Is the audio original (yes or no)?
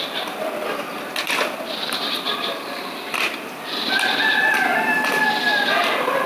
no